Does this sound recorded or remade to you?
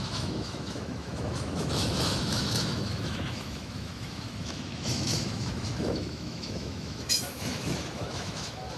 remade